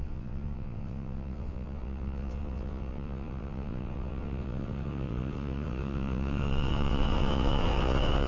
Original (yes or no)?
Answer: no